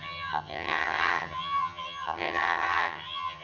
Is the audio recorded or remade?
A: remade